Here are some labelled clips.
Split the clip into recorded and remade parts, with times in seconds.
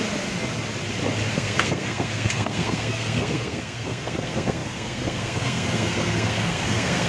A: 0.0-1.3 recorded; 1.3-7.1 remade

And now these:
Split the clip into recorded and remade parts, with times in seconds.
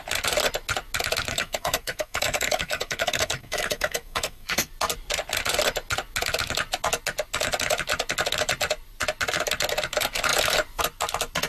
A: 0.0-1.3 recorded; 1.3-4.7 remade; 4.7-11.5 recorded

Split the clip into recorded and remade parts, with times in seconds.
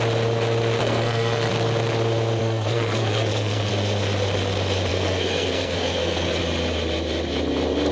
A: 0.0-0.8 recorded; 0.8-1.5 remade; 1.5-2.4 recorded; 2.4-3.7 remade; 3.7-4.9 recorded; 4.9-6.4 remade; 6.4-7.9 recorded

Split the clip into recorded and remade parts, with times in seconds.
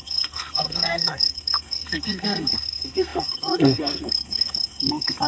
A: 0.0-5.3 remade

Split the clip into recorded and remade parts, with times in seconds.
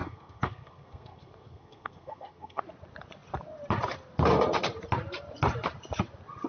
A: 0.0-2.6 remade; 2.6-6.5 recorded